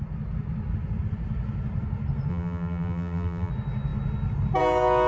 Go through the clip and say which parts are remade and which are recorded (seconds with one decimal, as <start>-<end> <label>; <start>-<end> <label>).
0.0-2.3 recorded; 2.3-3.5 remade; 3.5-5.1 recorded